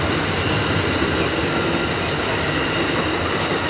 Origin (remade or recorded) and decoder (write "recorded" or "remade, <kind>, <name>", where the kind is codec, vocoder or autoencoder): recorded